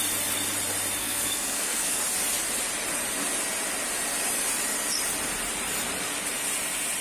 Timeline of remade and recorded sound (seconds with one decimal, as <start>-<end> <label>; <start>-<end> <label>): 0.0-1.0 recorded; 1.0-2.0 remade; 2.0-7.0 recorded